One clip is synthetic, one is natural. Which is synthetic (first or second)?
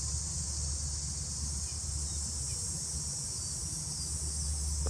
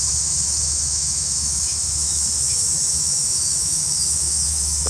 second